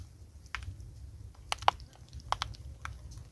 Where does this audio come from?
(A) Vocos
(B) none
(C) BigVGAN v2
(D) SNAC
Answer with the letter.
B